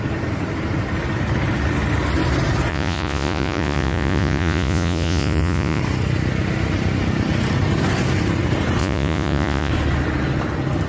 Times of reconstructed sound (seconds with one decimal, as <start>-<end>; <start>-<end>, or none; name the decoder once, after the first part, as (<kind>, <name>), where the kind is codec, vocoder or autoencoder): 2.7-5.8 (vocoder, Vocos); 8.8-9.7